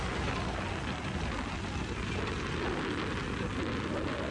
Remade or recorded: recorded